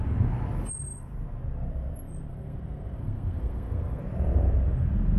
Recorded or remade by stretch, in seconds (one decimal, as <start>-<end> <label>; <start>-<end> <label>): 0.0-2.3 recorded; 2.3-4.0 remade; 4.0-5.2 recorded